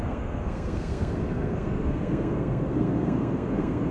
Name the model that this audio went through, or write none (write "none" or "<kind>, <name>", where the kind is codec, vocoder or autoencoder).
codec, SNAC